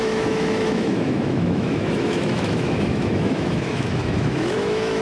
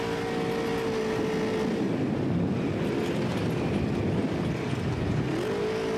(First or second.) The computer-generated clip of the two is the first